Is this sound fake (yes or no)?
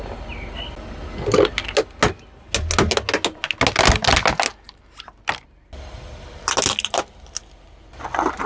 no